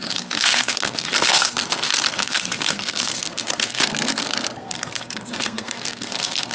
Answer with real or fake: fake